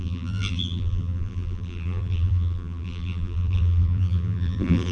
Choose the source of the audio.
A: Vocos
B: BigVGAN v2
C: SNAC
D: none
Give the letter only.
B